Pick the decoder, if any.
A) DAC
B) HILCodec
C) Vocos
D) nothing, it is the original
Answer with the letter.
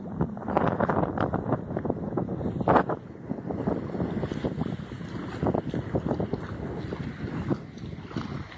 D